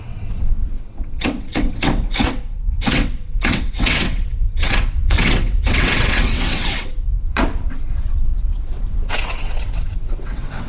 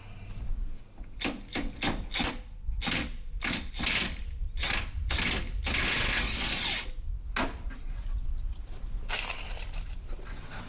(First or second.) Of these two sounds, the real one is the second